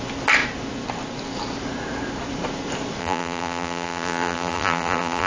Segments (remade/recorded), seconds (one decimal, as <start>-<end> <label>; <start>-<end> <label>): 0.0-3.0 recorded; 3.0-5.3 remade